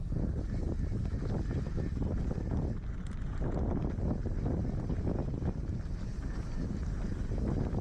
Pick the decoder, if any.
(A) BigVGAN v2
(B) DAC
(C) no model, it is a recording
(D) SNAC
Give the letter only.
C